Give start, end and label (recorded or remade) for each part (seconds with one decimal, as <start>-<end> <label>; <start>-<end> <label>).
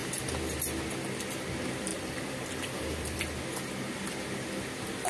0.0-1.9 recorded; 1.9-3.4 remade; 3.4-5.1 recorded